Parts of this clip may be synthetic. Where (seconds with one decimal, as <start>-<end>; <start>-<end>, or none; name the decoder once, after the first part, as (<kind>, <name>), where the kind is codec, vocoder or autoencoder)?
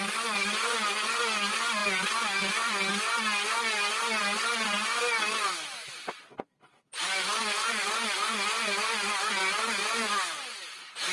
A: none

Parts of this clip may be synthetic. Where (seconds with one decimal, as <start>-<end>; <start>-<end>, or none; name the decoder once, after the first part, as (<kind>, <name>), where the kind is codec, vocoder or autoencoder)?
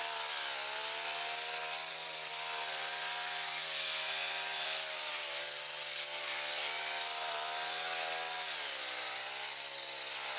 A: none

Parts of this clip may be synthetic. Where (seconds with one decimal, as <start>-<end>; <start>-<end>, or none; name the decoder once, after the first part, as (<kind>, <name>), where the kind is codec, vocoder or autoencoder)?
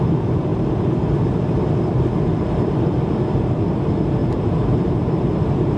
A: 0.0-5.8 (vocoder, BigVGAN v2)